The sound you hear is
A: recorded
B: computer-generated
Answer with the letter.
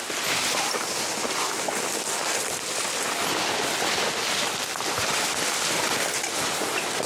A